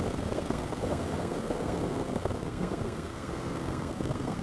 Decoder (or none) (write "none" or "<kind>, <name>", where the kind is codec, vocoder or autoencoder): codec, SNAC